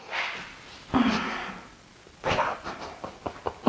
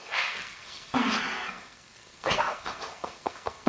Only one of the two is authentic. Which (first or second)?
first